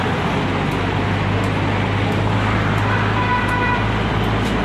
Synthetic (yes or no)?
no